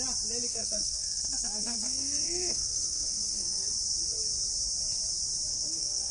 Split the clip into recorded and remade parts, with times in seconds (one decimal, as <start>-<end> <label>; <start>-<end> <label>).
0.0-0.5 recorded; 0.5-3.7 remade; 3.7-5.5 recorded; 5.5-6.1 remade